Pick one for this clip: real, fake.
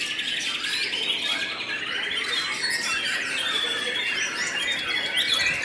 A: real